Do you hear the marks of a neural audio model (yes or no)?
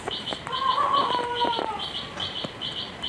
yes